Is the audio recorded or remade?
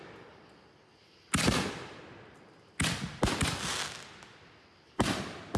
recorded